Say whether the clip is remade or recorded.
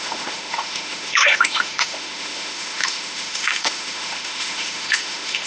remade